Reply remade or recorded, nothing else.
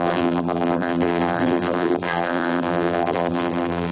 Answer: remade